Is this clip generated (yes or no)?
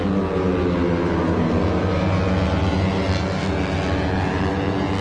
no